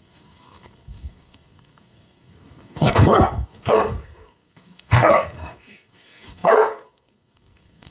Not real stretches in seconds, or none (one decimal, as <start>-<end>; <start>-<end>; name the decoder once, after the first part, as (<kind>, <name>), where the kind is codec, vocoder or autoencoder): 0.0-7.9 (codec, SNAC)